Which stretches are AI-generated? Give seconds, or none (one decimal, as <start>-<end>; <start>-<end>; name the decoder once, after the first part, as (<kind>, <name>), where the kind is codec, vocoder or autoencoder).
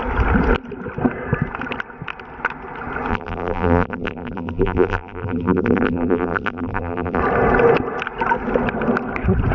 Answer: 3.1-7.2 (vocoder, BigVGAN v2)